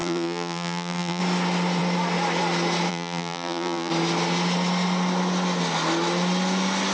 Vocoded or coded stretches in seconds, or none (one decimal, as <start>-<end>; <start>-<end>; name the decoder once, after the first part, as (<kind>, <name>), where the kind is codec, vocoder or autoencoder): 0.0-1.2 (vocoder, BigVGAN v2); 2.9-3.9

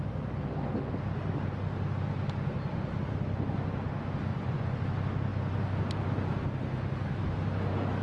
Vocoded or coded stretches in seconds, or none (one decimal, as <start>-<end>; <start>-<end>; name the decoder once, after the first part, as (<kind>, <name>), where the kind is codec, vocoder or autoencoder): 4.3-4.8 (vocoder, Vocos)

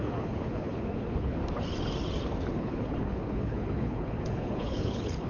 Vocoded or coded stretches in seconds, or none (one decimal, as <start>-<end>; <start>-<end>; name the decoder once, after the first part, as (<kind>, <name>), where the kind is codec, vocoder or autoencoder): 0.0-1.4 (codec, HILCodec); 2.5-5.3

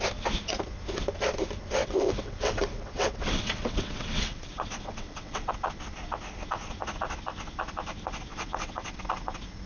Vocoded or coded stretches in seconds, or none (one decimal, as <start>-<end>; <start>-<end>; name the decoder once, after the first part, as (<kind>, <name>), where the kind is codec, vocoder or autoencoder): 1.8-5.5 (vocoder, WaveNeXt); 8.3-9.0

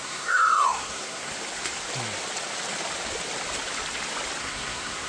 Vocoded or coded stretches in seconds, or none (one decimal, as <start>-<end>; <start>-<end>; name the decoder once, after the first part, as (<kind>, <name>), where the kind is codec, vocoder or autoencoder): 0.0-1.3 (codec, SNAC); 4.4-5.1

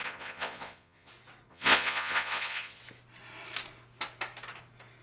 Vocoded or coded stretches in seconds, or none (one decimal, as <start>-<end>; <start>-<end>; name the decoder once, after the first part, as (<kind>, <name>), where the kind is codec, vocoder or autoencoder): 0.0-1.1 (vocoder, Vocos); 1.5-2.8